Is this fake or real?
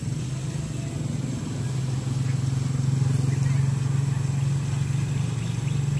real